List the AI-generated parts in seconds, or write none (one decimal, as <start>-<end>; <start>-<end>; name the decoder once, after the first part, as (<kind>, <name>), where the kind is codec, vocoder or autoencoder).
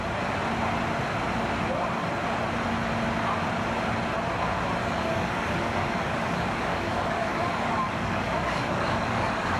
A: 4.8-9.6 (codec, DAC)